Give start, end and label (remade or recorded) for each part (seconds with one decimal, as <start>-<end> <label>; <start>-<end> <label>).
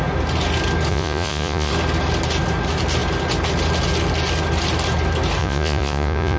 0.0-0.9 recorded; 0.9-1.7 remade; 1.7-5.4 recorded; 5.4-6.4 remade